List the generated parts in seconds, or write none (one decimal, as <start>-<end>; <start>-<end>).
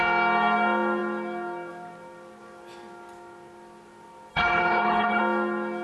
4.3-5.2